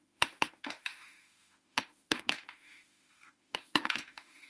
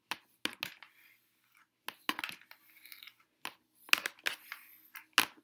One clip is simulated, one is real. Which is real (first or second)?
second